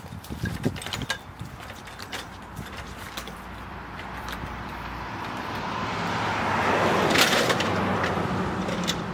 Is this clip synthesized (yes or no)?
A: yes